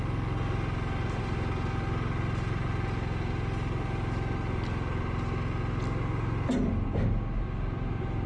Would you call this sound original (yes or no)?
yes